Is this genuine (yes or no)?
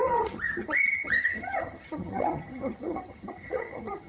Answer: no